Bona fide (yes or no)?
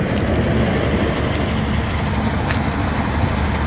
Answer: yes